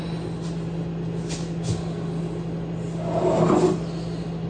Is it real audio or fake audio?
real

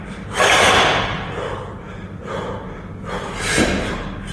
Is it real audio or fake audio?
real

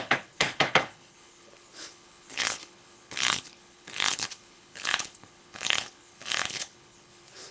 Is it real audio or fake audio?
fake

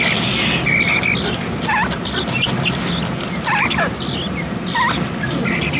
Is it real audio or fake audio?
real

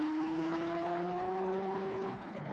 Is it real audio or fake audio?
fake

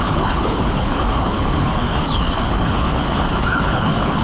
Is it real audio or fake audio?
fake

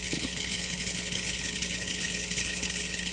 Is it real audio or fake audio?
fake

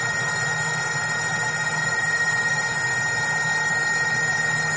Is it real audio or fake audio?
real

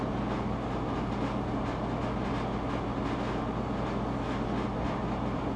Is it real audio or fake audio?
real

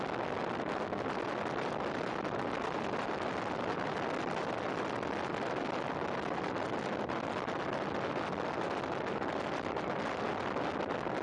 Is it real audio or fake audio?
real